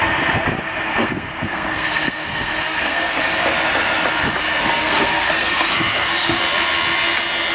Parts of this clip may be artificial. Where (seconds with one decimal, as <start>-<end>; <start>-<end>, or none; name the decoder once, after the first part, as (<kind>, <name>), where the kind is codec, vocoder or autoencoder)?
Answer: 0.9-3.2 (codec, SNAC); 4.6-6.4